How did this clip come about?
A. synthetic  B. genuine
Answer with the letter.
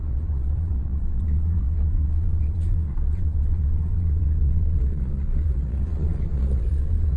A